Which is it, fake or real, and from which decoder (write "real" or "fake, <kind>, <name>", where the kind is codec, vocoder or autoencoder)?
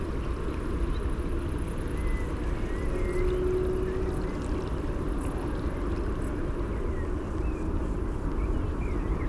real